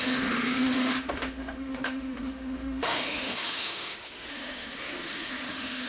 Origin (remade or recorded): remade